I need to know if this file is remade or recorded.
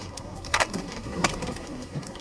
remade